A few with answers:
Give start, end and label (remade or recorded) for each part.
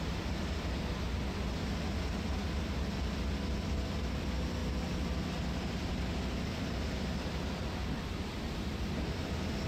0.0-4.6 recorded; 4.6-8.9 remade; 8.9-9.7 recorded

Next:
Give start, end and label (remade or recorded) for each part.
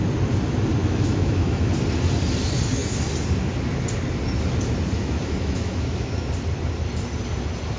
0.0-0.8 recorded; 0.8-1.7 remade; 1.7-5.0 recorded; 5.0-6.3 remade; 6.3-7.8 recorded